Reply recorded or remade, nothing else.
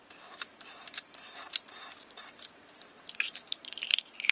remade